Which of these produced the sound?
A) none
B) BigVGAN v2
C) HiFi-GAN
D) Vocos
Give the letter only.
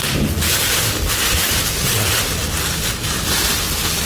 A